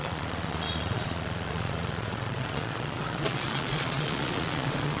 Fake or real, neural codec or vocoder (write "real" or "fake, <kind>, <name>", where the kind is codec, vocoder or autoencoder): fake, vocoder, Vocos